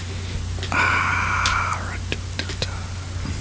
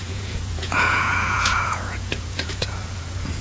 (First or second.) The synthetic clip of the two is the second